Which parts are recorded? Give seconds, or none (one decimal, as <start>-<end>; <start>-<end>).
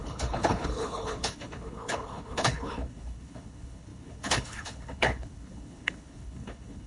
none